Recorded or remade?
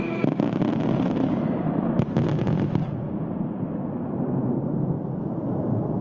recorded